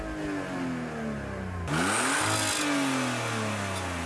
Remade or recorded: recorded